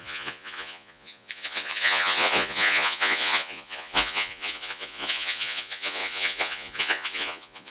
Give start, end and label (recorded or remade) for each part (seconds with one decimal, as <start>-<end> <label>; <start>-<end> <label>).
0.0-7.7 remade